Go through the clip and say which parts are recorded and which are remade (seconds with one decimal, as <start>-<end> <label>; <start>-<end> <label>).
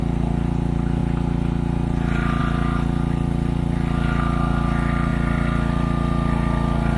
0.0-1.0 recorded; 1.0-2.4 remade; 2.4-5.1 recorded; 5.1-7.0 remade